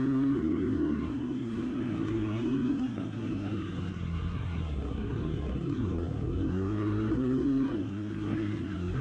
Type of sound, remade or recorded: remade